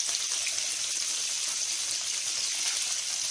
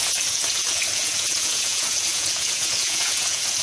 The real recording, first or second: first